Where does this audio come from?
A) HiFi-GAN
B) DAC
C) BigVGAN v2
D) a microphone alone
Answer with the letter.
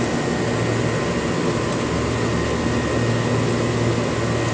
D